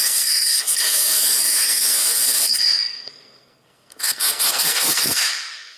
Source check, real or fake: fake